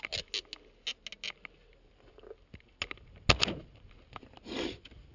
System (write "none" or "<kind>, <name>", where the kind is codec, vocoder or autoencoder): none